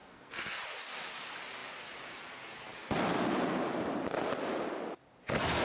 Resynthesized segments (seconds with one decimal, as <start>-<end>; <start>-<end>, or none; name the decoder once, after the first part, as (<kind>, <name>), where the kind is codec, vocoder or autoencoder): 0.0-0.6 (codec, SNAC)